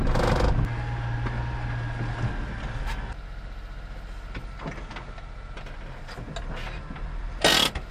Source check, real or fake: real